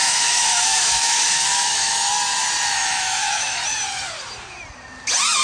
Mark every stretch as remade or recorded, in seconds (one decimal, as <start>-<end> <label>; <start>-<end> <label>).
0.0-2.1 remade; 2.1-2.8 recorded; 2.8-3.6 remade; 3.6-5.4 recorded